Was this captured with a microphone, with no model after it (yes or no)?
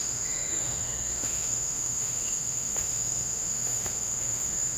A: no